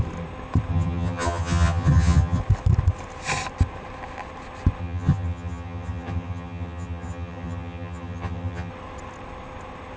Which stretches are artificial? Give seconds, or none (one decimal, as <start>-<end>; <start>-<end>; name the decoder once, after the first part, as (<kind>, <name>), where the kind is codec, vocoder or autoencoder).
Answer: 0.7-2.4 (vocoder, HiFi-GAN); 4.8-8.7